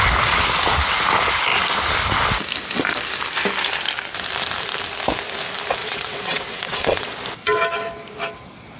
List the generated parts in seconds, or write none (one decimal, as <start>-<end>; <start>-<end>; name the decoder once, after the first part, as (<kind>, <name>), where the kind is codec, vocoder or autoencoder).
5.8-7.1 (vocoder, WaveNeXt)